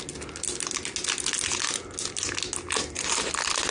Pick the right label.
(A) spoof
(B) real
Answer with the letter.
B